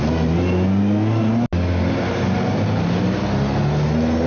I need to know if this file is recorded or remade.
recorded